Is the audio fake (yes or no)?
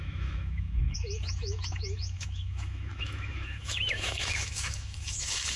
yes